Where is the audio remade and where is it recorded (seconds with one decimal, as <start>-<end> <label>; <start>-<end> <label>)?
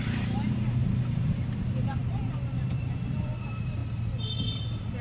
0.0-3.8 remade; 3.8-5.0 recorded